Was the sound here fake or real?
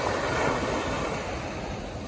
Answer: real